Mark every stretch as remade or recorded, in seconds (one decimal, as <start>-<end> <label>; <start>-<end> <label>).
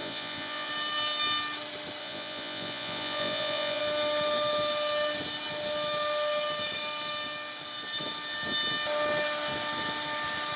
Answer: 0.0-0.7 remade; 0.7-2.0 recorded; 2.0-3.8 remade; 3.8-10.6 recorded